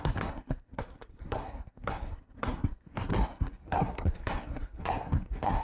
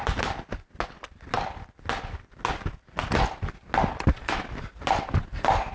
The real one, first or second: second